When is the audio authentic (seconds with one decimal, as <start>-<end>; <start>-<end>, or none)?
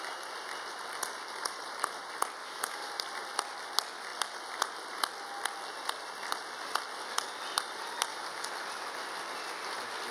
0.0-2.4; 2.9-10.1